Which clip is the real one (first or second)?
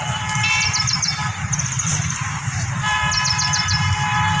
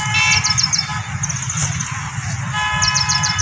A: second